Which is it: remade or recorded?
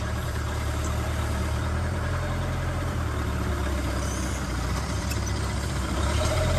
remade